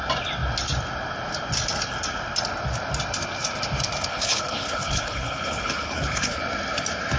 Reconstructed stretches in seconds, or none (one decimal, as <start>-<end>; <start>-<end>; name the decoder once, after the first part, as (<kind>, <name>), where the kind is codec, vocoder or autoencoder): 4.1-6.4 (codec, HILCodec)